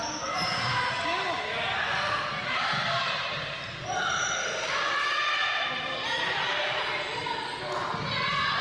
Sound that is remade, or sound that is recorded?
recorded